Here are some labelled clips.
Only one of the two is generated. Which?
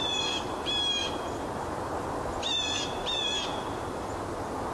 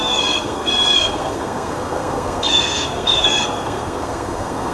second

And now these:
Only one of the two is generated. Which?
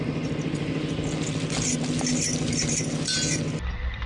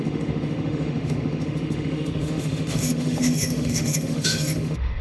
second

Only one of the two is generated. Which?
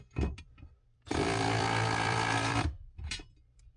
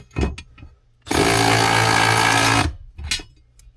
first